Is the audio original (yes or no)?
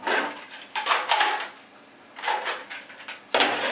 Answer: yes